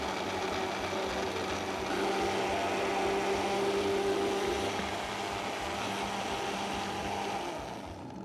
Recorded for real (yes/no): yes